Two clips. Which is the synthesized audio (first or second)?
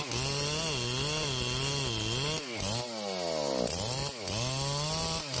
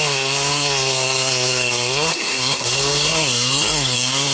second